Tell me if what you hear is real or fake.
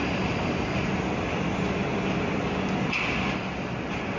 real